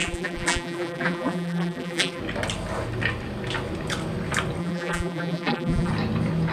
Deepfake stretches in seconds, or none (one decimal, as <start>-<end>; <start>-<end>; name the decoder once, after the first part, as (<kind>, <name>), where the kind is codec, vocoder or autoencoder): 0.0-2.2 (vocoder, BigVGAN v2); 4.6-5.9